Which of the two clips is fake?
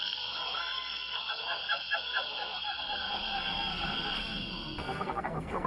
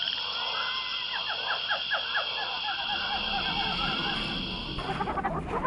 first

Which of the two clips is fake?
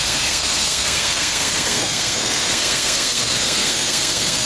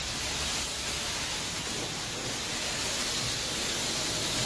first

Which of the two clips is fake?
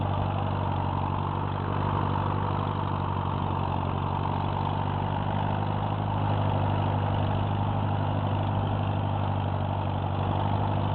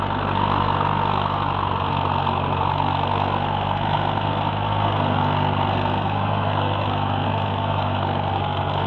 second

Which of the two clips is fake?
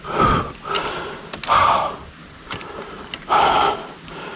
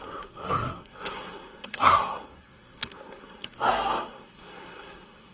second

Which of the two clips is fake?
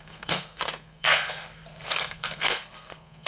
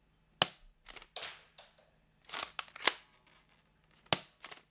first